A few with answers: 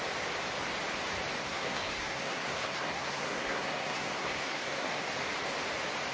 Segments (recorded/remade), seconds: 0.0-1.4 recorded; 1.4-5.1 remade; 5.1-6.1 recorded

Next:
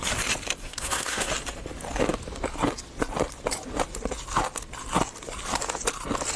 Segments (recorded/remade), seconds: 0.0-0.6 recorded; 0.6-1.3 remade; 1.3-6.4 recorded

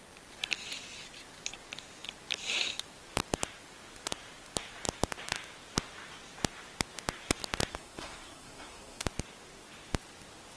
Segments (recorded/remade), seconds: 0.0-7.7 recorded; 7.7-9.0 remade; 9.0-10.6 recorded

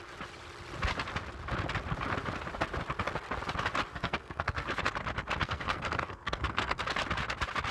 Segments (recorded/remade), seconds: 0.0-3.9 recorded; 3.9-4.9 remade; 4.9-5.4 recorded; 5.4-6.8 remade; 6.8-7.7 recorded

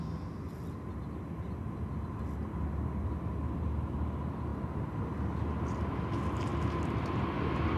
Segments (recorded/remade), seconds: 0.0-7.8 recorded

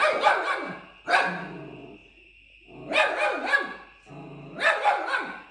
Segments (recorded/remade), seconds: 0.0-5.5 recorded

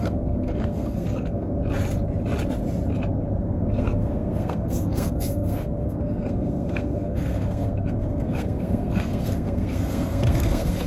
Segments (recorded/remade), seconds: 0.0-1.6 remade; 1.6-3.4 recorded; 3.4-10.9 remade

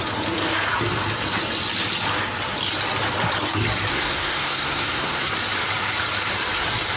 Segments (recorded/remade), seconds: 0.0-3.9 recorded; 3.9-5.3 remade; 5.3-7.0 recorded